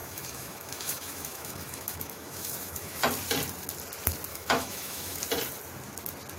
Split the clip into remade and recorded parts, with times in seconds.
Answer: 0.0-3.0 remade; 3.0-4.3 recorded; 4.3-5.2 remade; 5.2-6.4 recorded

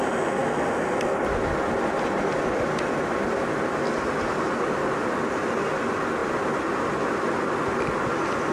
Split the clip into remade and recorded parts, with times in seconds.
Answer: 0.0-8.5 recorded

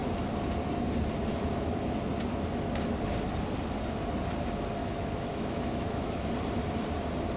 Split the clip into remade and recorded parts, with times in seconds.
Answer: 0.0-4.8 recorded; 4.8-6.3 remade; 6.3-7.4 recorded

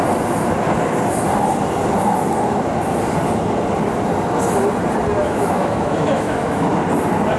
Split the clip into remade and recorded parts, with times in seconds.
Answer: 0.0-5.2 recorded; 5.2-6.7 remade; 6.7-7.4 recorded

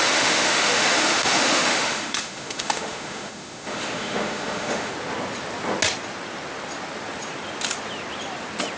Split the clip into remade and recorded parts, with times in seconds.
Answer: 0.0-4.9 remade; 4.9-8.8 recorded

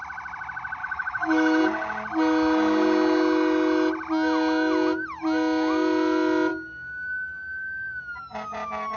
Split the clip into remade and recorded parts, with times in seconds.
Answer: 0.0-0.8 recorded; 0.8-1.6 remade; 1.6-9.0 recorded

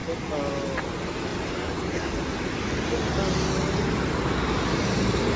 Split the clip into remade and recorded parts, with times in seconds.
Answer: 0.0-5.4 recorded